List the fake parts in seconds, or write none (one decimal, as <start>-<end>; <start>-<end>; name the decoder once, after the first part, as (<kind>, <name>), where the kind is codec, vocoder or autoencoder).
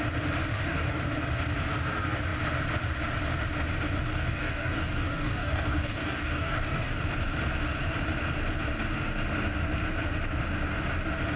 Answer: 0.5-1.0 (codec, DAC); 4.1-6.9